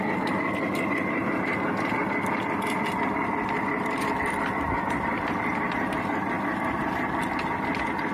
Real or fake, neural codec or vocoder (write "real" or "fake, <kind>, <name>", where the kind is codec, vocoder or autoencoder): real